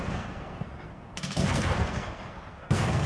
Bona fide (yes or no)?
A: no